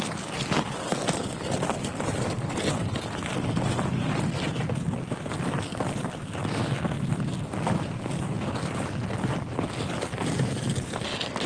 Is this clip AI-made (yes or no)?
no